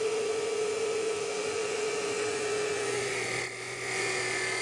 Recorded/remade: remade